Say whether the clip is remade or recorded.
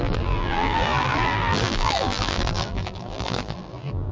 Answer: remade